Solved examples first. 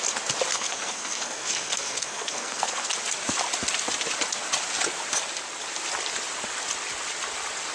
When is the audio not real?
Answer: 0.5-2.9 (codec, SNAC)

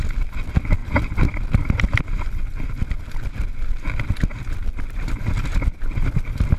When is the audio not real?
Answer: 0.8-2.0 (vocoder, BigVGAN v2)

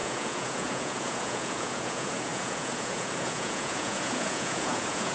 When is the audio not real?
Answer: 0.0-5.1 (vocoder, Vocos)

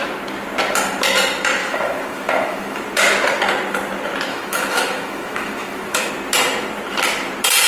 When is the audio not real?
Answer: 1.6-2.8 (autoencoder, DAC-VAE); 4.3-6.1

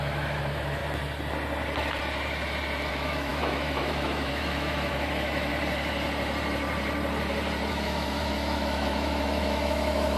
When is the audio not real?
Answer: 0.0-0.8 (autoencoder, DAC-VAE); 2.9-5.5; 7.7-10.2

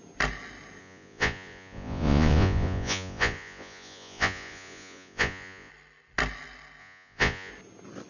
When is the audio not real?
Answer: 0.8-5.7 (vocoder, Vocos); 6.8-7.5

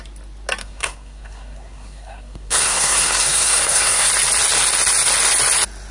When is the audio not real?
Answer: 0.6-4.1 (codec, SNAC)